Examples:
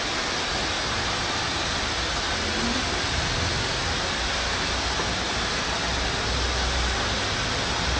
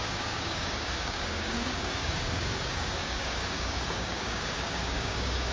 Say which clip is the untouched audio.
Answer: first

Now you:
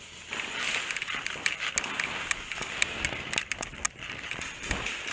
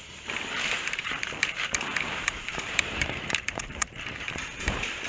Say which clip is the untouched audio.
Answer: first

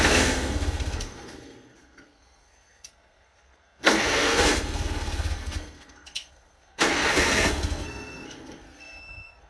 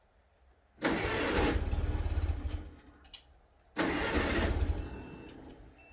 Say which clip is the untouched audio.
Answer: second